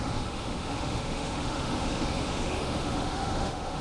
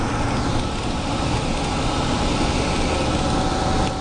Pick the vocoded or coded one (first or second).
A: first